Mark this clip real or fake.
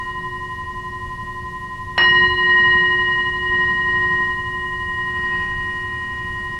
real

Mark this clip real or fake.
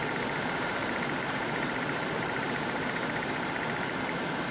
real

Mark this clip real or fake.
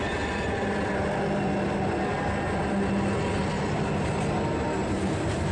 real